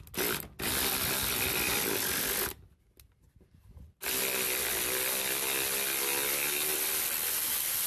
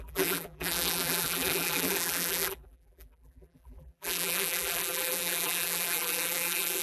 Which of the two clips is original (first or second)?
first